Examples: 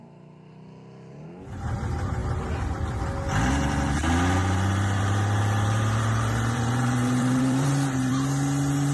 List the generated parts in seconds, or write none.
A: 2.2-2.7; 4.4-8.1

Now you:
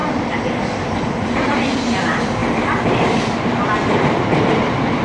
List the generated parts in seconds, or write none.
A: 0.0-2.4; 3.9-5.0

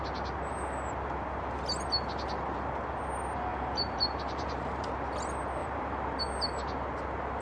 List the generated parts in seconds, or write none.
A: 3.5-4.9; 5.6-6.2

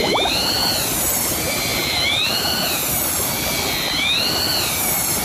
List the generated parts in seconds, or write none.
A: none

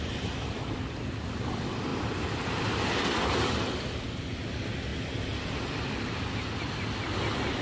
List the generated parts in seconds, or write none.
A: none

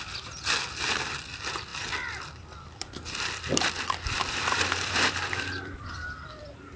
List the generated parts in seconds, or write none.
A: 0.0-6.8

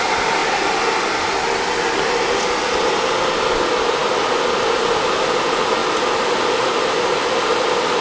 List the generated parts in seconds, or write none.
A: none

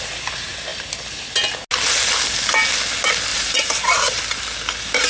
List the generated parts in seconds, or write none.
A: 3.3-4.2